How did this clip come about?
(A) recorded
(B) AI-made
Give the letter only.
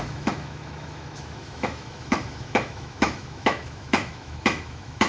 B